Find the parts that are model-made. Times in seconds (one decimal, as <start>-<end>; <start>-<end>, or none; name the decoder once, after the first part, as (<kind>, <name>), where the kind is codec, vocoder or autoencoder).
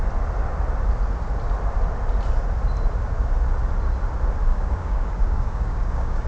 4.5-6.3 (codec, DAC)